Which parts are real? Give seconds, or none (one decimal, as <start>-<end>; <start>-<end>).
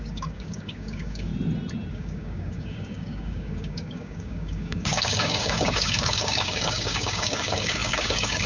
1.3-1.9